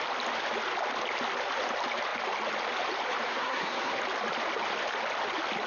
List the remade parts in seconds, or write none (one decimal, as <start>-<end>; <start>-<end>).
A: 3.3-4.0